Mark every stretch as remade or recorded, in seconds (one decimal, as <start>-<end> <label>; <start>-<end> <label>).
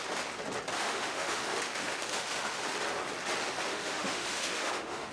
0.0-0.8 recorded; 0.8-2.6 remade; 2.6-3.7 recorded; 3.7-5.1 remade